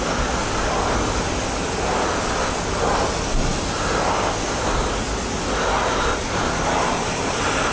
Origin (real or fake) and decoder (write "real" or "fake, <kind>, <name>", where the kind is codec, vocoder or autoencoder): real